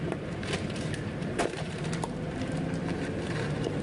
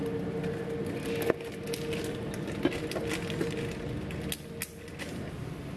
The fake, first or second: first